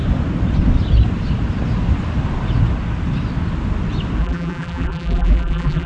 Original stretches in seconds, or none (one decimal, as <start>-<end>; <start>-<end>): 0.0-4.2